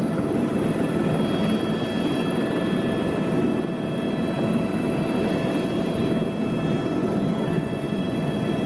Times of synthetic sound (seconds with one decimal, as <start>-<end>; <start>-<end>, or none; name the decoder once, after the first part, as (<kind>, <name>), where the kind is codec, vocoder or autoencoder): 7.0-8.7 (vocoder, Vocos)